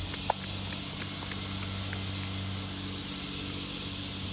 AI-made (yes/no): no